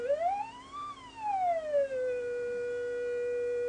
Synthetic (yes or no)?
no